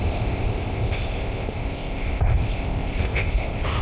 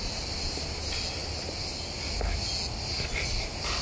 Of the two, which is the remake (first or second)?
first